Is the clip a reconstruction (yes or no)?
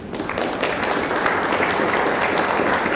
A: no